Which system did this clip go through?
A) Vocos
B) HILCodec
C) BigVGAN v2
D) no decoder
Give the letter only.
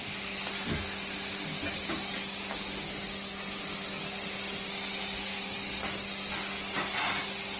D